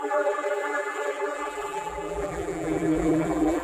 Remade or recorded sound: remade